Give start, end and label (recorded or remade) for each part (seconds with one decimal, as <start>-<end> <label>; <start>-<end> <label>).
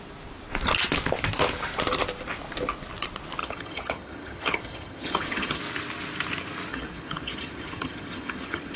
0.0-3.4 recorded; 3.4-5.6 remade; 5.6-6.7 recorded; 6.7-8.8 remade